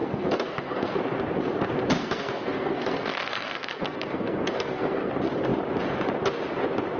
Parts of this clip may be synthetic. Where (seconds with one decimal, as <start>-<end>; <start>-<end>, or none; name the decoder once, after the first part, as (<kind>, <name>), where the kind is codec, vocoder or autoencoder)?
0.0-1.0 (codec, SNAC); 2.0-5.1